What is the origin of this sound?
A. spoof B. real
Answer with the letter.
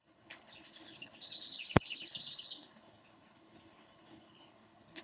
A